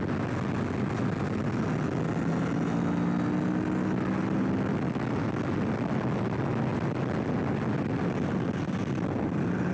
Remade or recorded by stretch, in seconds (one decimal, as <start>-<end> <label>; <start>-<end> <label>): 0.0-6.7 recorded; 6.7-7.4 remade; 7.4-9.7 recorded